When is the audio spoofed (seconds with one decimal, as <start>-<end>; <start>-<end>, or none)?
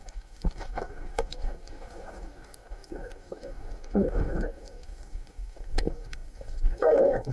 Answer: 0.0-7.3